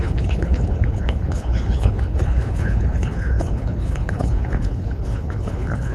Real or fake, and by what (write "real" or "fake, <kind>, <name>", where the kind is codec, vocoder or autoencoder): fake, codec, HILCodec